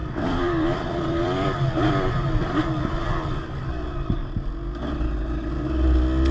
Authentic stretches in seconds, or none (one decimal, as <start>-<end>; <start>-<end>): 3.7-6.3